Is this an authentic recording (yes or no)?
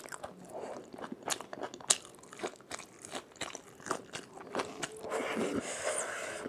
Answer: yes